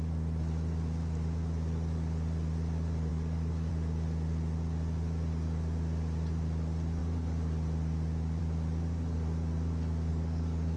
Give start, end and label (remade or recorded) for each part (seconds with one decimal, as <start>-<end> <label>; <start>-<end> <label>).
0.0-3.1 recorded; 3.1-3.7 remade; 3.7-10.1 recorded; 10.1-10.8 remade